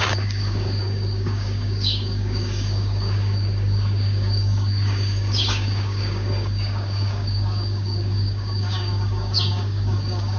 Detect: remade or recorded remade